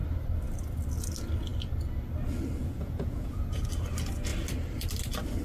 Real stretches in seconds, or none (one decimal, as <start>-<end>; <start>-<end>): 0.0-2.6; 3.6-5.4